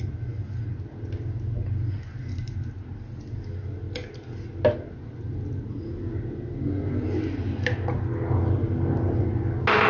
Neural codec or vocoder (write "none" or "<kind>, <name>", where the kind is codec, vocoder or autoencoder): none